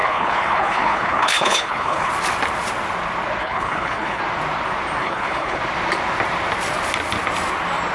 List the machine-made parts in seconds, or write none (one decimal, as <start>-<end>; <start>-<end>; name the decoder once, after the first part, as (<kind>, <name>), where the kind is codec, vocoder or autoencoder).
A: 0.0-2.1 (codec, HILCodec); 3.4-4.2; 5.0-5.6